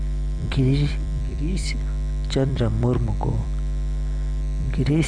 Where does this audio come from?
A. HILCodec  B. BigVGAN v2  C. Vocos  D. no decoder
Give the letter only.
B